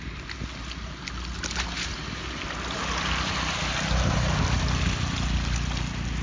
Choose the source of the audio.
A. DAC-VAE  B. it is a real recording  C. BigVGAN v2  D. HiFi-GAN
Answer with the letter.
B